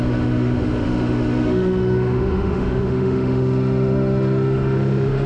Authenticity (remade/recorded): remade